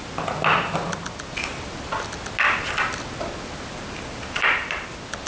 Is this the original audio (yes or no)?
yes